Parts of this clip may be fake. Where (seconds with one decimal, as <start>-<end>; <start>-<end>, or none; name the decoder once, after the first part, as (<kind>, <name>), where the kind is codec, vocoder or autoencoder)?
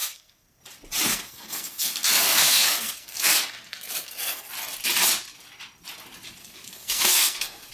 0.0-0.6 (codec, SNAC); 1.1-4.5; 6.4-7.7